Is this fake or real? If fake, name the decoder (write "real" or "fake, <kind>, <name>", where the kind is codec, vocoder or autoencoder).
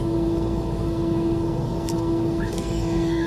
fake, codec, SNAC